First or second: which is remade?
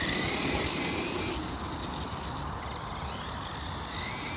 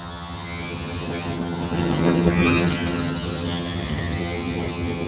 second